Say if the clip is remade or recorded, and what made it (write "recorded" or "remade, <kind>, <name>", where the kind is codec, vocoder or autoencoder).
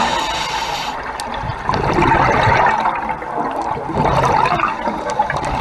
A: recorded